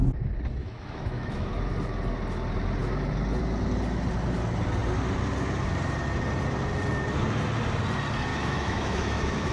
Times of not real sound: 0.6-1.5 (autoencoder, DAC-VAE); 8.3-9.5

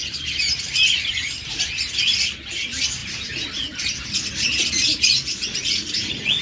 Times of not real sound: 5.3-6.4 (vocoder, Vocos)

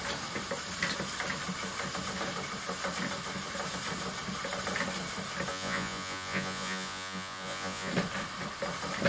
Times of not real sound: 5.5-7.9 (vocoder, Vocos)

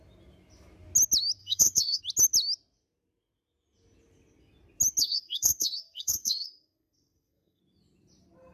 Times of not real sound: 1.4-2.0 (codec, SNAC); 5.0-7.6